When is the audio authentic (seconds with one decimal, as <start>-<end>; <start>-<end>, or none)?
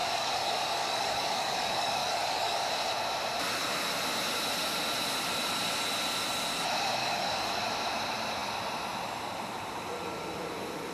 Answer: 2.7-7.0; 7.6-10.9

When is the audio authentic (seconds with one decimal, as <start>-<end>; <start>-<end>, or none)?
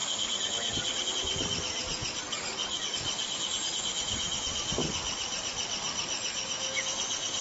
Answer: 0.0-7.4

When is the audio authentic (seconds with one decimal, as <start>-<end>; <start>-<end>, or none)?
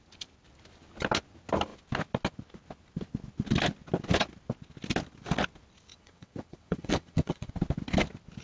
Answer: 0.0-5.9; 7.5-8.4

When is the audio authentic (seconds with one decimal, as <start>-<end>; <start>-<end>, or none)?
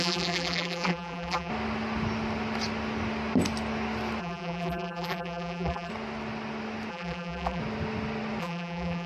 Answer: 1.5-4.2; 5.9-6.9; 7.6-8.4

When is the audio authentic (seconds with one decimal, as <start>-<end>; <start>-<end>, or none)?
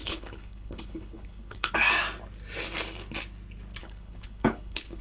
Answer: 1.7-3.8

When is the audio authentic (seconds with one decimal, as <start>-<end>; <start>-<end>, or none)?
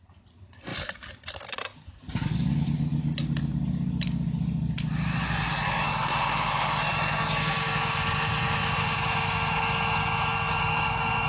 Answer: 0.0-11.3